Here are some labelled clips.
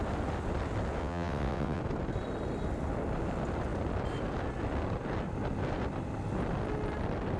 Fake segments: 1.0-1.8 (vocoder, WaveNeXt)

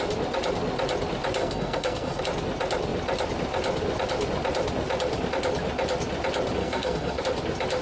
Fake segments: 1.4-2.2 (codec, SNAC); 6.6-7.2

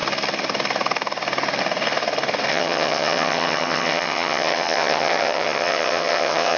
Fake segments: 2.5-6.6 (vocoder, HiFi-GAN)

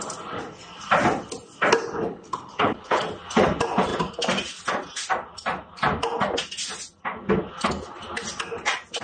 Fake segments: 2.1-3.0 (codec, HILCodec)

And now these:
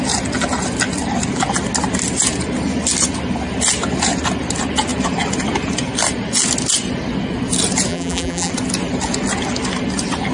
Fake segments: 7.9-8.5 (vocoder, BigVGAN v2)